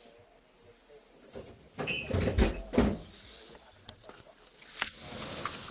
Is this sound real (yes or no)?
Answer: yes